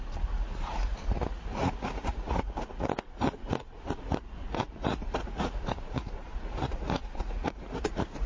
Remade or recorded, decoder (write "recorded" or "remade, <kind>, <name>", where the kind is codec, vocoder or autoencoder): remade, vocoder, Vocos